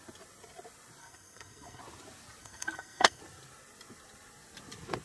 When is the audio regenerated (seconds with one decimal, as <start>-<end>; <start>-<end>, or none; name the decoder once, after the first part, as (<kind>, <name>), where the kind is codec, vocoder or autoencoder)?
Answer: 1.0-1.8 (codec, SNAC); 2.4-3.2